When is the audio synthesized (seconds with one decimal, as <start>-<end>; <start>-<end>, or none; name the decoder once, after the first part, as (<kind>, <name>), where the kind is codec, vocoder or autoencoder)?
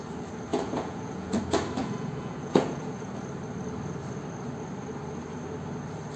0.5-1.4 (vocoder, Vocos); 1.8-3.1